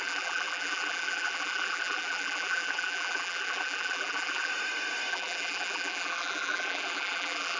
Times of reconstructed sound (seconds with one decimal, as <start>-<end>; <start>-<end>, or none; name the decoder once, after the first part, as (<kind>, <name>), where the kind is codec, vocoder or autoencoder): 0.0-4.5 (vocoder, BigVGAN v2); 5.1-7.6